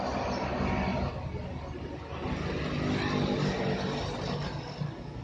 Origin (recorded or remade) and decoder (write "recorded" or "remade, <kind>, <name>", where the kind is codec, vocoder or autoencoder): recorded